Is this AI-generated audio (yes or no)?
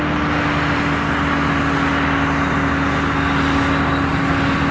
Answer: no